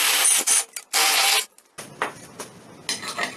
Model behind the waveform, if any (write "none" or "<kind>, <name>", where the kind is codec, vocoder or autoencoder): none